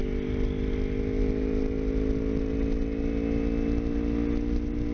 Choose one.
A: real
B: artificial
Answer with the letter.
A